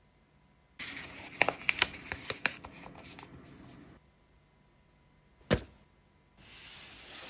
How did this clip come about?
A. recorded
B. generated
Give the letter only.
A